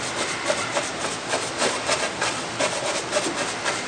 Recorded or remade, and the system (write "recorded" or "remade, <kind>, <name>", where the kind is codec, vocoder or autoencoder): remade, vocoder, BigVGAN v2